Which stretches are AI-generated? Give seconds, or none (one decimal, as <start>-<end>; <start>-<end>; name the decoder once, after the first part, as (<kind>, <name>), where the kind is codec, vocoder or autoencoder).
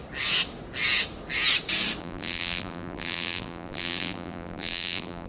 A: 2.0-5.3 (vocoder, BigVGAN v2)